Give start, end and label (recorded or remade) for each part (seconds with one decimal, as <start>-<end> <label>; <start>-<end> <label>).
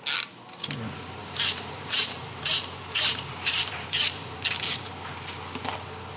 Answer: 0.0-1.2 recorded; 1.2-4.9 remade; 4.9-6.2 recorded